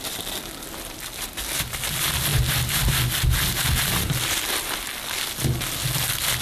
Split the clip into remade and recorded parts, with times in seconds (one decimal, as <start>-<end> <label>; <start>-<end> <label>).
0.0-6.4 recorded